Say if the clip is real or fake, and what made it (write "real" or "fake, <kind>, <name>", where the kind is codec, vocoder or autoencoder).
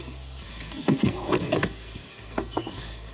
fake, codec, SNAC